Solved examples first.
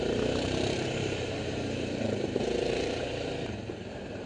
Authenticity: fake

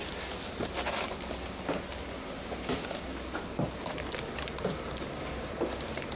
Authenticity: real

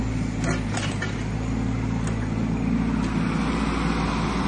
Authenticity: real